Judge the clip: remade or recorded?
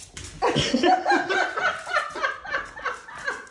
recorded